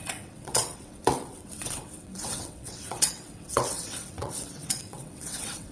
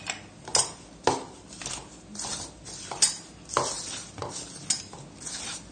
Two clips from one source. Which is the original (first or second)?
second